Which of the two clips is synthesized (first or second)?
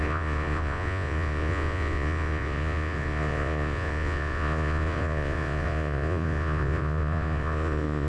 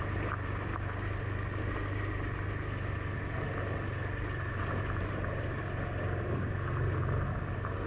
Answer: first